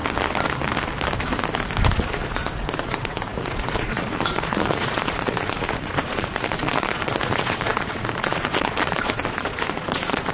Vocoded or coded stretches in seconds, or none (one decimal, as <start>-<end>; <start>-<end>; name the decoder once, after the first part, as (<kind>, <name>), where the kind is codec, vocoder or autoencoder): 1.8-10.3 (vocoder, Vocos)

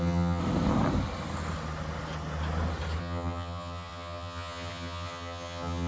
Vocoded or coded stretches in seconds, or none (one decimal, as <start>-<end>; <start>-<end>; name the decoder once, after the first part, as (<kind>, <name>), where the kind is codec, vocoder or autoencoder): 0.0-0.4 (vocoder, HiFi-GAN); 3.0-5.9

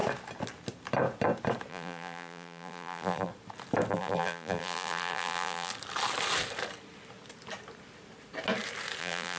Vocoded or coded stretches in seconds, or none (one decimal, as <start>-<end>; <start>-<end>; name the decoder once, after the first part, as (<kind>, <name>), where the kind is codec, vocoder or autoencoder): 1.7-3.3 (vocoder, BigVGAN v2); 3.9-5.7; 9.0-9.4

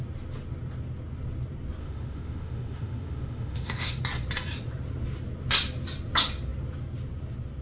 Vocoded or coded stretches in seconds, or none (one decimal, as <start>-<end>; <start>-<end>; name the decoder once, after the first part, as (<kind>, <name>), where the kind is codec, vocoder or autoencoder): 1.8-4.0 (autoencoder, DAC-VAE)

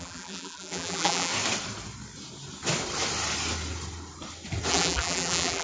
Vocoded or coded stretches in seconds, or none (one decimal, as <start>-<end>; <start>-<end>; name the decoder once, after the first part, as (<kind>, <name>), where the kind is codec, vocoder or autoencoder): 0.0-1.3 (vocoder, BigVGAN v2); 4.7-5.6